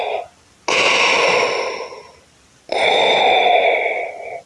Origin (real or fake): real